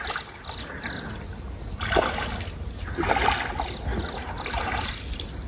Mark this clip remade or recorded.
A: recorded